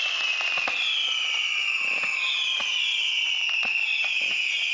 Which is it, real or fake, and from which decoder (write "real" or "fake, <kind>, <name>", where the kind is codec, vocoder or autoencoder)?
real